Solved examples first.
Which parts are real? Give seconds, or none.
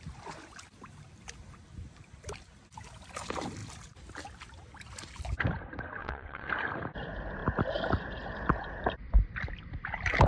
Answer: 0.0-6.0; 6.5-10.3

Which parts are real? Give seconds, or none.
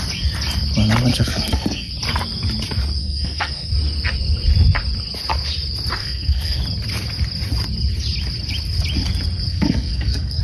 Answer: 0.0-1.1; 1.9-3.0; 3.7-6.0; 6.6-9.5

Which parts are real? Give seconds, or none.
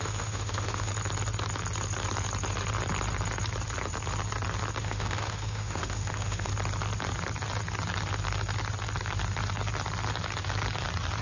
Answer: 0.9-4.8; 6.5-11.2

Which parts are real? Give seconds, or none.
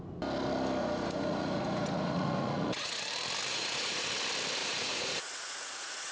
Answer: 0.0-0.8; 3.0-3.5; 4.1-4.6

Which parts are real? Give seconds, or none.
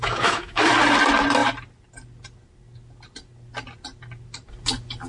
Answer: 0.7-5.1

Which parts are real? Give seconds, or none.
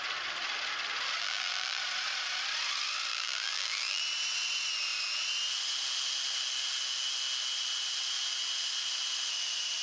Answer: 0.0-1.2; 1.8-3.1; 4.0-9.8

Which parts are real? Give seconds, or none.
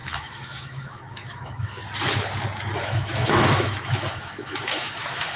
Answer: 1.8-2.8